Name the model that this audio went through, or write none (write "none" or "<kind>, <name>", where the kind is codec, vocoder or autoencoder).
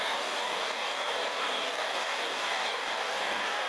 codec, DAC